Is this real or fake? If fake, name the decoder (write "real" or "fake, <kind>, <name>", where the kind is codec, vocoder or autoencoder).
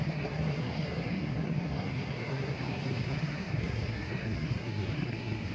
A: fake, codec, SNAC